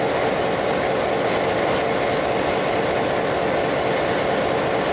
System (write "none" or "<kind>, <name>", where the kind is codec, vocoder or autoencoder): none